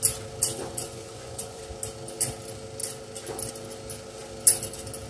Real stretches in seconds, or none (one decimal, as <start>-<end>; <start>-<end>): 0.0-0.6; 1.6-5.1